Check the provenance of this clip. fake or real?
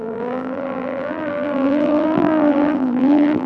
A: fake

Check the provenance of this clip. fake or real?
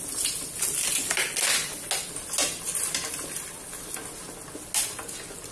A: real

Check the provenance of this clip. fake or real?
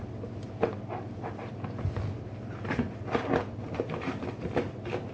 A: real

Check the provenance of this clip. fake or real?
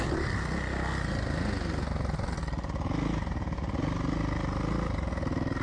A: real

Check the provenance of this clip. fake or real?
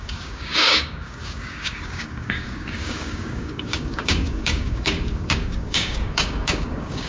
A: fake